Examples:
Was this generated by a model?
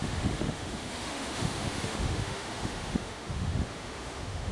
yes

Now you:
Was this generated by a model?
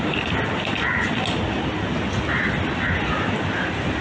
no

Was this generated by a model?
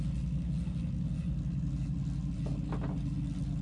no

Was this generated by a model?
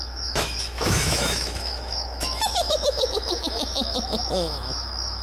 yes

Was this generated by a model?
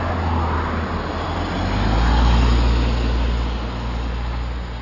no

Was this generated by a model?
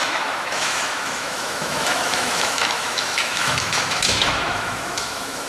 yes